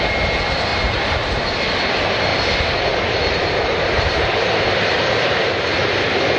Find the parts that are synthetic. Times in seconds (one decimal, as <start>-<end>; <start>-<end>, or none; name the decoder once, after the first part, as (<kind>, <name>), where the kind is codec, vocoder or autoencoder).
0.7-1.4 (vocoder, BigVGAN v2); 2.3-6.4